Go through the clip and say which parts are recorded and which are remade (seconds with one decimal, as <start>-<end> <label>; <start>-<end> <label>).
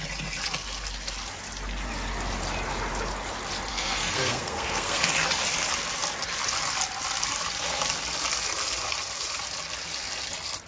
0.0-3.7 recorded; 3.7-5.0 remade; 5.0-10.7 recorded